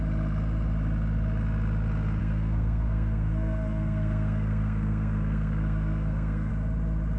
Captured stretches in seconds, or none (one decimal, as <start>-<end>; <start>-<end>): 0.0-2.2; 6.5-7.2